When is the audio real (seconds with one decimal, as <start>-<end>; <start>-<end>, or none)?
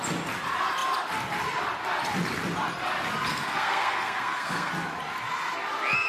0.0-3.3; 4.7-6.1